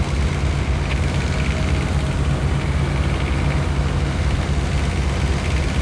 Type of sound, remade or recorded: recorded